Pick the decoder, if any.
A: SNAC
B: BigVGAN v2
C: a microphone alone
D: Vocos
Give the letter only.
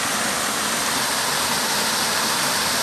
C